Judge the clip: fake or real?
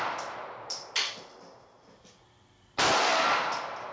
real